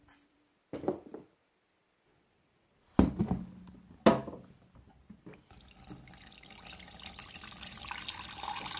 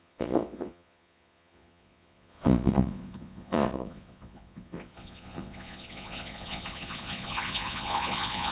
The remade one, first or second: second